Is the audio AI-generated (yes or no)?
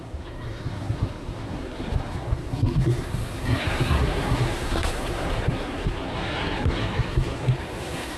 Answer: yes